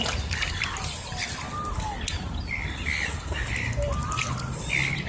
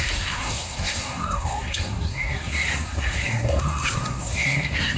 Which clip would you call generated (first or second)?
second